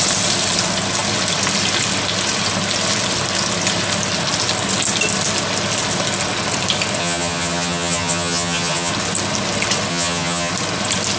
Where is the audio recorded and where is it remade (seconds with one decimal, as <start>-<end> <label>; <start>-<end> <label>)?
0.0-7.0 recorded; 7.0-8.9 remade; 8.9-9.9 recorded; 9.9-10.5 remade; 10.5-11.2 recorded